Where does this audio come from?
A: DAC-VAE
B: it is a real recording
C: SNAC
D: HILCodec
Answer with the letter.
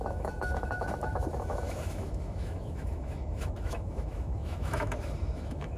A